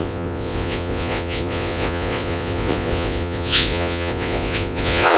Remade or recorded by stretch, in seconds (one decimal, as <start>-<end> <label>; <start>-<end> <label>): 0.0-5.2 remade